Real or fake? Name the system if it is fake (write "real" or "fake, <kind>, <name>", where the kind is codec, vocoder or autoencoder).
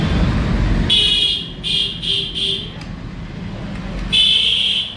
real